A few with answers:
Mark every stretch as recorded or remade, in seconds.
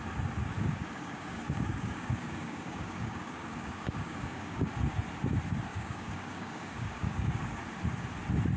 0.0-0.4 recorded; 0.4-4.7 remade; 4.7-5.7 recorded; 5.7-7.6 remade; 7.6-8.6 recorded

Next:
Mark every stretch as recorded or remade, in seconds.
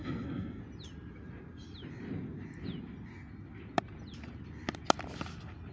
0.0-0.6 remade; 0.6-5.7 recorded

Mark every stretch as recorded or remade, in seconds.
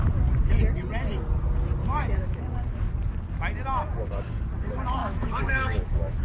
0.0-1.8 recorded; 1.8-2.4 remade; 2.4-5.0 recorded; 5.0-6.2 remade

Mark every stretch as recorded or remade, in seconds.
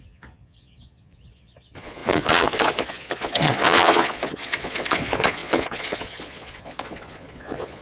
0.0-7.8 remade